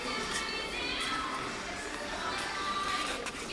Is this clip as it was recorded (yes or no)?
yes